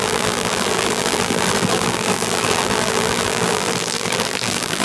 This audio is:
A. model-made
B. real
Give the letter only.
A